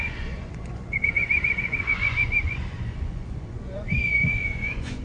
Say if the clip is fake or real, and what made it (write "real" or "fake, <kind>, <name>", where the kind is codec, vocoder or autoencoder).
fake, vocoder, Vocos